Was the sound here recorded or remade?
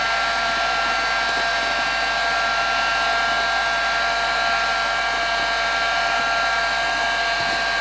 recorded